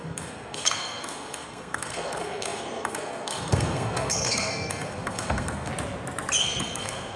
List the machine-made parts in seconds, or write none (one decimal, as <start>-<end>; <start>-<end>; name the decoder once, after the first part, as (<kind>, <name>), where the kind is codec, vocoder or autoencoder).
0.0-5.7 (codec, SNAC); 6.4-7.2

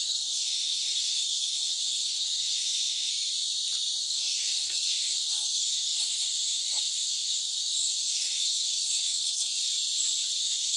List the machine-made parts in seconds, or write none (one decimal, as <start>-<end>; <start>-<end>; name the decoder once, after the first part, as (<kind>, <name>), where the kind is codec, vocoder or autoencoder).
0.0-3.1 (codec, SNAC); 4.0-9.6; 10.4-10.8

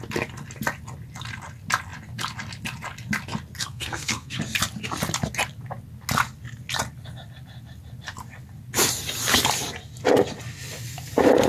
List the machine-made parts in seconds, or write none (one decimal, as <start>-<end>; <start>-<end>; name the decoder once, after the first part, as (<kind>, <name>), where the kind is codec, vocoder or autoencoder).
3.6-4.4 (codec, SNAC)

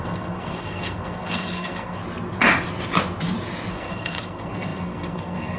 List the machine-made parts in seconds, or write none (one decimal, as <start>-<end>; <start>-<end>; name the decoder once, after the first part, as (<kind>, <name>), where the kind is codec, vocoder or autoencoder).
0.0-2.0 (codec, SNAC); 3.7-5.6

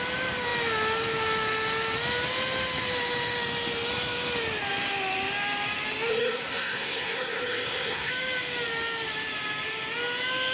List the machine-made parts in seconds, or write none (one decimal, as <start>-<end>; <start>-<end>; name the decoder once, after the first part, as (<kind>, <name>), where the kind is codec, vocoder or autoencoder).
6.1-8.1 (codec, SNAC)

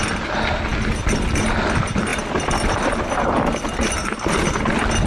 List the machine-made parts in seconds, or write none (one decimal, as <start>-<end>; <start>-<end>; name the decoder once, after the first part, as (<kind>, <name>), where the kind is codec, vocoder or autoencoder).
none

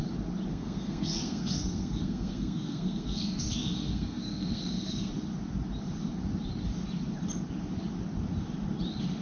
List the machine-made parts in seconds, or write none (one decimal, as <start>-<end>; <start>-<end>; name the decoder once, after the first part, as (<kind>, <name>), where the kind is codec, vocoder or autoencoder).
0.5-5.1 (codec, SNAC)

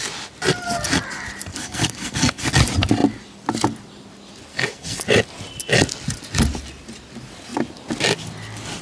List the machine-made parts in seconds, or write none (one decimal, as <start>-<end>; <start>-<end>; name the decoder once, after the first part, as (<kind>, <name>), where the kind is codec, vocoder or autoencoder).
1.5-2.5 (codec, SNAC); 4.5-5.0